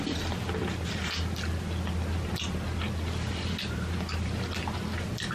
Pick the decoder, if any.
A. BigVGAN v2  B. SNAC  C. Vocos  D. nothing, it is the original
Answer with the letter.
D